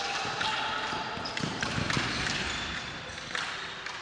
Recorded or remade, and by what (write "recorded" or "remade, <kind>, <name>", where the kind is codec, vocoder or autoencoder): recorded